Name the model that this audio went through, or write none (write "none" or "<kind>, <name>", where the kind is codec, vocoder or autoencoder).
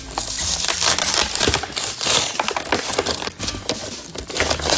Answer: vocoder, BigVGAN v2